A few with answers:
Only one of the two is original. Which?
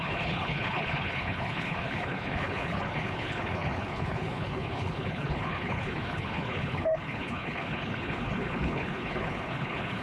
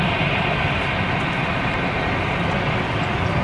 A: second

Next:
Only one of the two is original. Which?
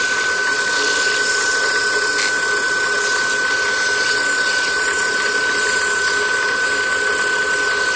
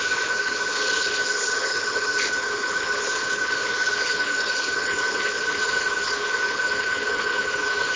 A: first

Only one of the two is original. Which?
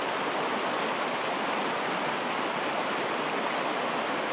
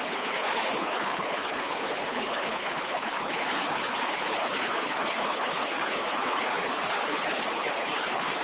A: first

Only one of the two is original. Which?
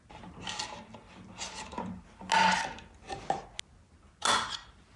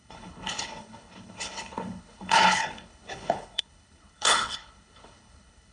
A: first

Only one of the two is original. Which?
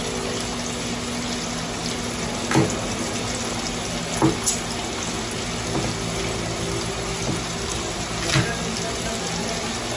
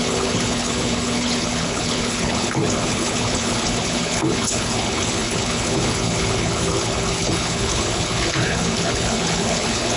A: first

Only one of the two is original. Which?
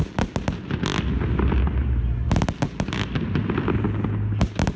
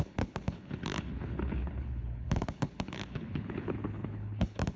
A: first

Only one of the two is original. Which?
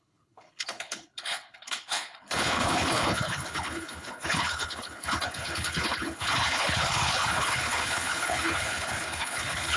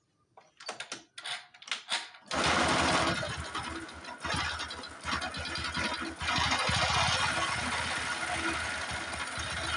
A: second